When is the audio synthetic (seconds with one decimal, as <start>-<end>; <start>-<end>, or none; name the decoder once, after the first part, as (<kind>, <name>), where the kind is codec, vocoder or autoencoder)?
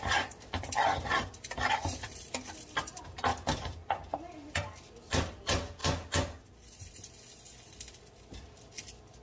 0.0-5.8 (vocoder, BigVGAN v2); 8.0-9.2